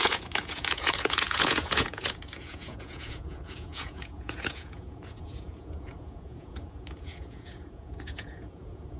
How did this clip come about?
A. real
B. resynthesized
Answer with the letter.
B